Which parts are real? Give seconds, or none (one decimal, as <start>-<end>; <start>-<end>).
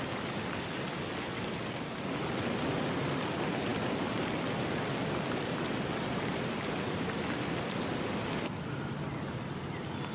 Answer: 0.0-10.1